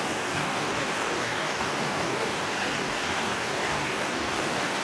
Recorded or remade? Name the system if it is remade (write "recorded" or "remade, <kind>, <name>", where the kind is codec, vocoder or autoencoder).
remade, codec, DAC